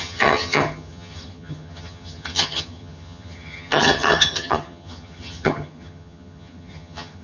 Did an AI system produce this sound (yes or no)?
yes